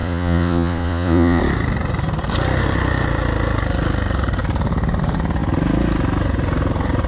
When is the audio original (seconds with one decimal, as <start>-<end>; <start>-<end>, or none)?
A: 1.4-7.1

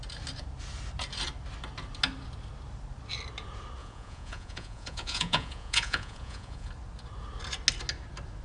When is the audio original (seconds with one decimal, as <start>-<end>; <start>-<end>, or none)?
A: 0.0-3.8; 6.7-8.4

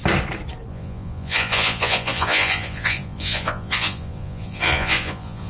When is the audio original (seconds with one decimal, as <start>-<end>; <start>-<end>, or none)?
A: 0.0-0.7

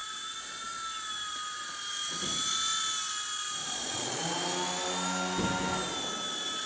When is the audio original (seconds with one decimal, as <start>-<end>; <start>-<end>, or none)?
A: 0.0-3.6; 4.2-6.7